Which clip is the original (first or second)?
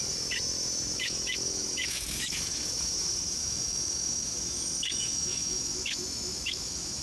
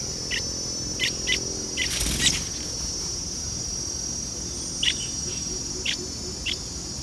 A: second